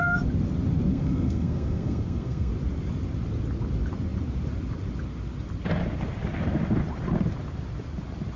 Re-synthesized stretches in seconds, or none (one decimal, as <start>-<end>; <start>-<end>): 0.9-2.5